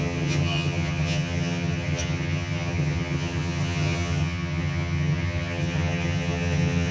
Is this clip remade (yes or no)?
yes